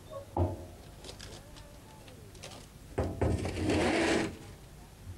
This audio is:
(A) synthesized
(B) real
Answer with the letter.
B